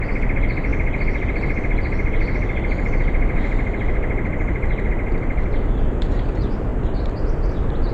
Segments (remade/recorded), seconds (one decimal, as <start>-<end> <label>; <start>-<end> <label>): 0.0-0.7 recorded; 0.7-4.9 remade; 4.9-6.7 recorded; 6.7-7.5 remade; 7.5-7.9 recorded